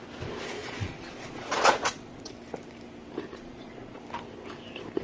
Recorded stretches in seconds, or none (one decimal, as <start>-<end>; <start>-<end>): 0.0-0.6; 2.3-3.3; 4.0-5.0